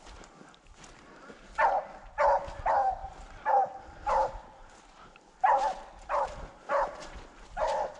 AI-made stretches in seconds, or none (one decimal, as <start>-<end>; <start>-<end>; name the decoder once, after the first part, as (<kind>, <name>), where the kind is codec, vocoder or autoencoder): none